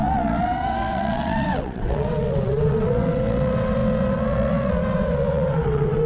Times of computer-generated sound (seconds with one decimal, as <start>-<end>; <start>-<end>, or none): 0.0-6.1